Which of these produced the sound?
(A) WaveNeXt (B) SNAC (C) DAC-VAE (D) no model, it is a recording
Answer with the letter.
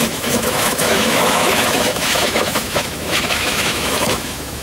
C